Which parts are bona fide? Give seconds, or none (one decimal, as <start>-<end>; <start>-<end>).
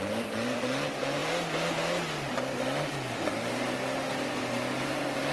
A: 0.0-5.3